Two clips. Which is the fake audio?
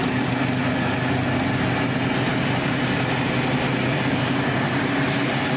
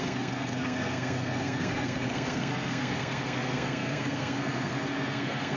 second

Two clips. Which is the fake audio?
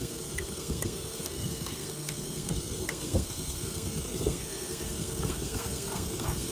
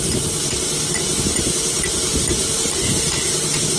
first